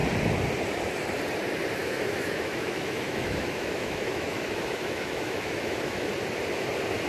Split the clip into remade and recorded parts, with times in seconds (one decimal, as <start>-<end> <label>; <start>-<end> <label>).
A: 0.0-1.8 recorded; 1.8-6.1 remade; 6.1-7.1 recorded